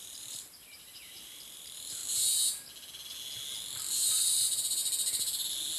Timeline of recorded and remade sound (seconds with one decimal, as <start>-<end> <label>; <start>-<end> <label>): 0.0-2.0 remade; 2.0-4.1 recorded; 4.1-4.8 remade; 4.8-5.8 recorded

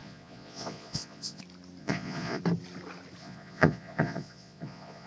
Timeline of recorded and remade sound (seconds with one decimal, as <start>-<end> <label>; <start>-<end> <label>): 0.0-1.4 remade; 1.4-1.8 recorded; 1.8-2.4 remade; 2.4-3.2 recorded; 3.2-5.1 remade